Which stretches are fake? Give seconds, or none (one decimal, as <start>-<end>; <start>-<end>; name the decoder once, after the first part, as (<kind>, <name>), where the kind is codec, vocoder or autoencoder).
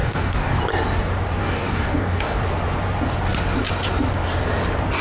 0.0-0.6 (codec, DAC); 1.4-2.4